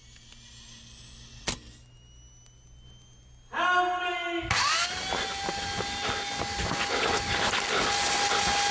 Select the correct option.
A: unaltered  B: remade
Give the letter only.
A